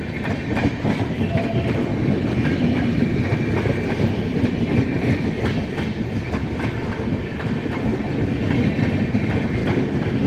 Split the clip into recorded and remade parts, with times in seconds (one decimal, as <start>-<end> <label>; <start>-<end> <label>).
0.0-1.9 remade; 1.9-6.6 recorded; 6.6-7.9 remade; 7.9-8.9 recorded; 8.9-10.3 remade